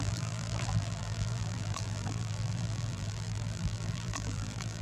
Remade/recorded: remade